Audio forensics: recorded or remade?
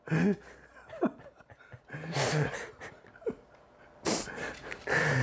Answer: remade